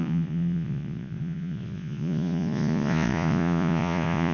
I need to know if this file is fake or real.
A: fake